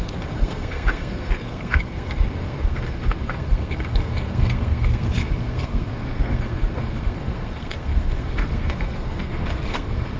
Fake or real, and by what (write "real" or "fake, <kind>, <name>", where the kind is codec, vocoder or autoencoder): fake, codec, SNAC